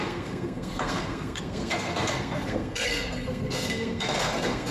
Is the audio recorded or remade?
remade